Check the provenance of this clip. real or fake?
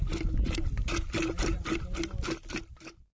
real